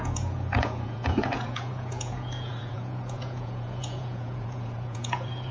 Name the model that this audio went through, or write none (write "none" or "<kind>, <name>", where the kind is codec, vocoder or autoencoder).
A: vocoder, Vocos